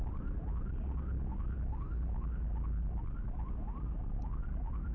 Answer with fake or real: real